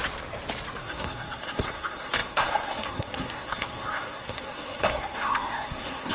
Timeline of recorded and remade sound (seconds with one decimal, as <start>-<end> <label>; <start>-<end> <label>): 0.0-0.8 recorded; 0.8-6.1 remade